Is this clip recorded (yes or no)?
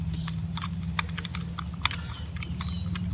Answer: yes